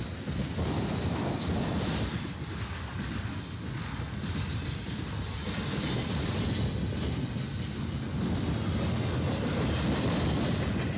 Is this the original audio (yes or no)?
yes